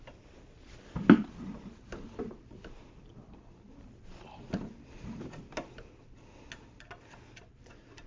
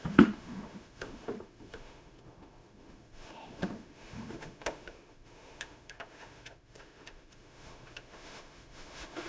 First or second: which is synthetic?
second